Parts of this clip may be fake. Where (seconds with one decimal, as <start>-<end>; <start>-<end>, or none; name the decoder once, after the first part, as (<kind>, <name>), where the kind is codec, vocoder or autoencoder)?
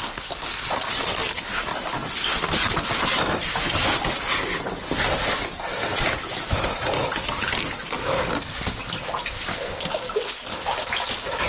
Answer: 9.5-10.3 (codec, SNAC)